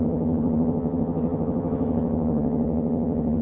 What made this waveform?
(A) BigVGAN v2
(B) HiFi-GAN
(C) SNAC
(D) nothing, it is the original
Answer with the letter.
B